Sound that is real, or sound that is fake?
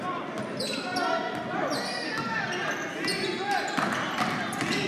real